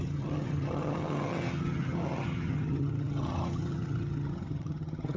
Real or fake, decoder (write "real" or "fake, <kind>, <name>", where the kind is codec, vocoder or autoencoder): fake, vocoder, HiFi-GAN